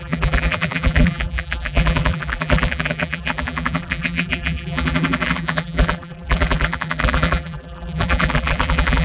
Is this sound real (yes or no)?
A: no